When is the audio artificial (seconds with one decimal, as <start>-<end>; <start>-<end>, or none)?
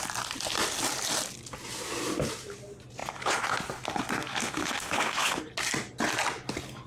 4.4-5.4